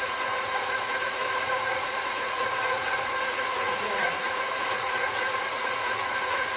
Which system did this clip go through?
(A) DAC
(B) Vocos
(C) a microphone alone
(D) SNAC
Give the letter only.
B